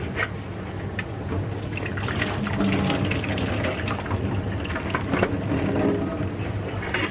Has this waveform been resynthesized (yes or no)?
no